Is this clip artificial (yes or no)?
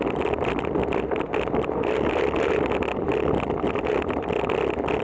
no